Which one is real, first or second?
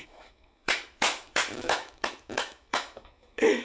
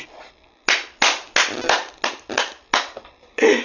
second